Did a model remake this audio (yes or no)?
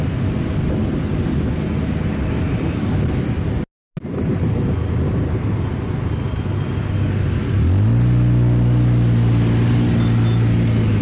no